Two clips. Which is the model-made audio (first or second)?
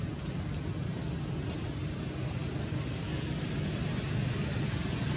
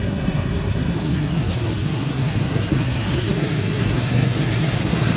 second